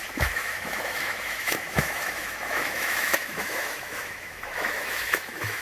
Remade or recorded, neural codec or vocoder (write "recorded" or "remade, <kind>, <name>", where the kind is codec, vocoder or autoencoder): remade, autoencoder, DAC-VAE